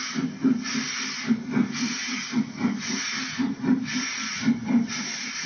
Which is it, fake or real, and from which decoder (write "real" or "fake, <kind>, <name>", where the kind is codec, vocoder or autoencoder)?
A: real